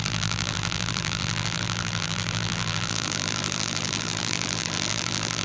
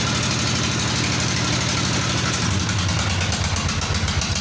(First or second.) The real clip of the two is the second